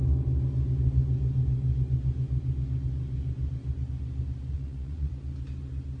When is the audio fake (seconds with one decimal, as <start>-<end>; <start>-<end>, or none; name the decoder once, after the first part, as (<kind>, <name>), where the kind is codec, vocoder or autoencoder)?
4.5-5.1 (vocoder, Vocos)